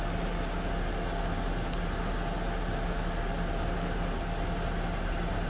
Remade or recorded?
recorded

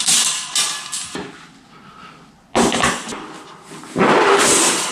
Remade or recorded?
recorded